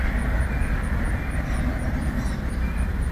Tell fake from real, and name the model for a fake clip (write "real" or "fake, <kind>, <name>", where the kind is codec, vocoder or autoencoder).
real